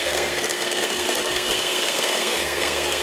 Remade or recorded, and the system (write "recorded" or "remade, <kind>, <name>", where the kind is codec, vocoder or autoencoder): remade, codec, SNAC